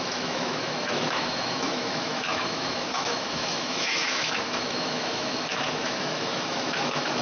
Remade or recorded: remade